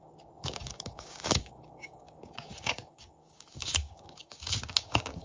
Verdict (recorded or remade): remade